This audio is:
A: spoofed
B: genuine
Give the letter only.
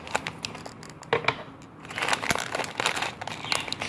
B